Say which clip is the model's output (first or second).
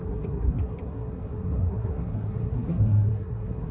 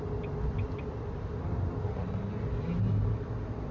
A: first